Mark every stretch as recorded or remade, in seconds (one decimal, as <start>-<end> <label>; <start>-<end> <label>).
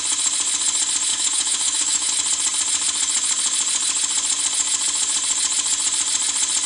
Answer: 0.0-1.1 recorded; 1.1-2.1 remade; 2.1-6.7 recorded